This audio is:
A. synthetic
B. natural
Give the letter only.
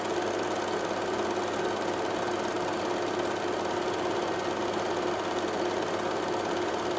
B